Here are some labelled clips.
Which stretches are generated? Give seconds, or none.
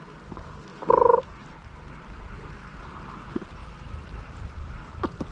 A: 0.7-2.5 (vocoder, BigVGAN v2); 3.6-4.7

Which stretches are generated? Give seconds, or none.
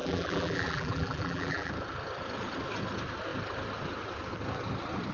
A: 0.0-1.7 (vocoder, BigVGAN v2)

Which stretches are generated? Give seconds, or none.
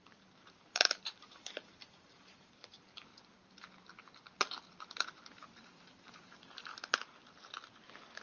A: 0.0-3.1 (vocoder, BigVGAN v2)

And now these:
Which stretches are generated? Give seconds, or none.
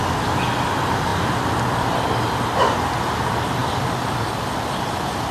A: none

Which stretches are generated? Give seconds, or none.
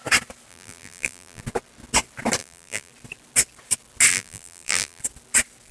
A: 0.5-1.4 (vocoder, BigVGAN v2); 2.4-2.9; 4.1-5.0